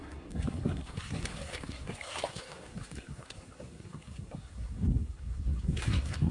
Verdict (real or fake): fake